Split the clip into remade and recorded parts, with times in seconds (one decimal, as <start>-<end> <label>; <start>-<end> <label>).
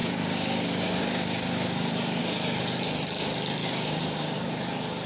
0.0-2.2 remade; 2.2-3.6 recorded; 3.6-4.5 remade; 4.5-5.1 recorded